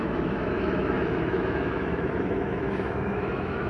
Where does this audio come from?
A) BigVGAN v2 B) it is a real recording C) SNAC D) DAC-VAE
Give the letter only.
D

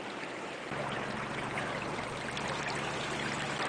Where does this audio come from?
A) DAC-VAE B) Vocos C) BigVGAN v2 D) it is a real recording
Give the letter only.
D